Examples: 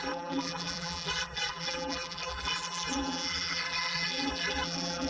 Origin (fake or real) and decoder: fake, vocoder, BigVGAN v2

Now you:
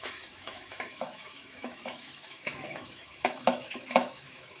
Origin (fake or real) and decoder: fake, autoencoder, DAC-VAE